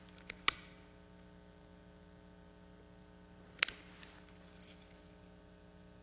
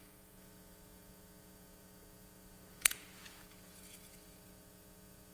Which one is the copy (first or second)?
second